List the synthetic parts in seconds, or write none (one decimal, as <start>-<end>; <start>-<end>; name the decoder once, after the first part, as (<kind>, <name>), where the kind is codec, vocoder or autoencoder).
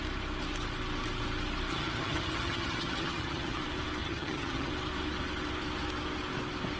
1.7-3.6 (vocoder, HiFi-GAN); 4.0-4.7